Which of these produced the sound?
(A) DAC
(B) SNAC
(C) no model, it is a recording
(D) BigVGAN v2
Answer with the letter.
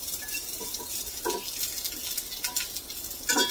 C